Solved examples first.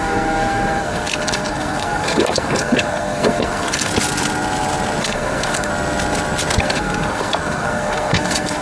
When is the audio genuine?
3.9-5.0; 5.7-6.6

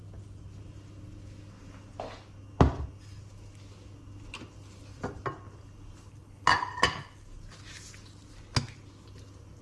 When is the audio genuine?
0.0-9.6

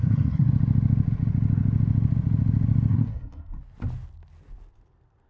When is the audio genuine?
0.5-2.9; 3.6-5.3

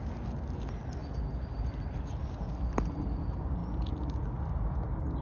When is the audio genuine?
0.0-5.2

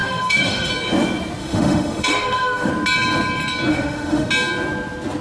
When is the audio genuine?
0.7-1.4; 2.7-3.7; 4.3-5.2

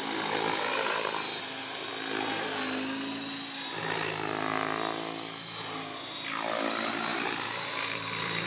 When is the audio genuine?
0.0-0.7; 1.4-7.1

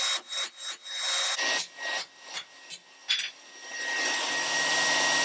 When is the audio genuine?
0.0-5.2